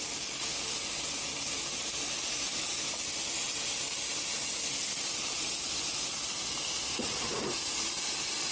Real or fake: real